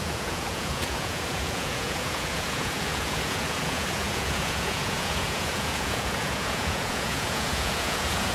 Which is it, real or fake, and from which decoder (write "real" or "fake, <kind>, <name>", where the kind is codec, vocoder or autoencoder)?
fake, vocoder, Vocos